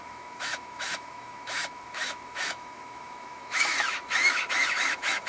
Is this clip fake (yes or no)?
yes